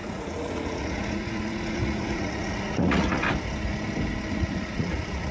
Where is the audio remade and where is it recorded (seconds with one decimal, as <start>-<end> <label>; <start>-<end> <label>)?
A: 0.0-3.2 remade; 3.2-4.3 recorded; 4.3-5.3 remade